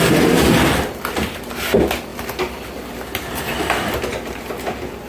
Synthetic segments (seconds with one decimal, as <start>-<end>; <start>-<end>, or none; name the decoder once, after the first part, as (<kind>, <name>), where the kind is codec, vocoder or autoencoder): none

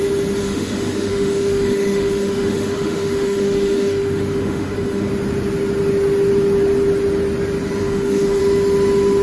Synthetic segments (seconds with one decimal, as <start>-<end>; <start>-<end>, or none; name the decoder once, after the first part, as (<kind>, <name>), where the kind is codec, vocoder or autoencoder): 0.4-5.1 (autoencoder, DAC-VAE); 7.8-8.4

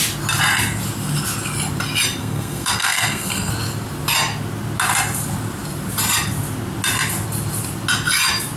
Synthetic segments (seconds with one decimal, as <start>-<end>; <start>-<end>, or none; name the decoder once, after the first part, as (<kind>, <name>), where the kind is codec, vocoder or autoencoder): 2.2-3.5 (codec, SNAC)

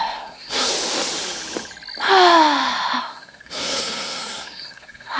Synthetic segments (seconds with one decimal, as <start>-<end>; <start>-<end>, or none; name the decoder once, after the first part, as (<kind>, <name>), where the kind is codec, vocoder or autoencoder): 0.0-0.7 (codec, SNAC); 3.0-5.2